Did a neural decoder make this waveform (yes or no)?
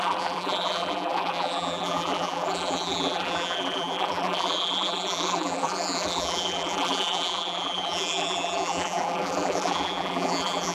yes